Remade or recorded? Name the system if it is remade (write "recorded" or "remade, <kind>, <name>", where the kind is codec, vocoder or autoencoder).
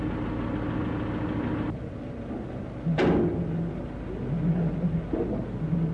recorded